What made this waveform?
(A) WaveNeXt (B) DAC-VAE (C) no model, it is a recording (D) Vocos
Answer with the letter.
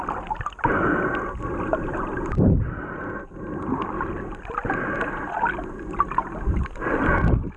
C